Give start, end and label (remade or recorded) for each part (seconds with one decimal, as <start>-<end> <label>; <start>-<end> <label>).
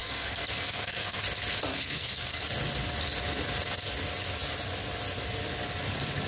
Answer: 0.0-1.2 remade; 1.2-1.7 recorded; 1.7-2.4 remade; 2.4-6.3 recorded